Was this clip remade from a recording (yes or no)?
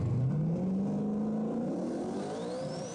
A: no